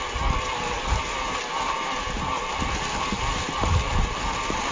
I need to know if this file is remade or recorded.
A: recorded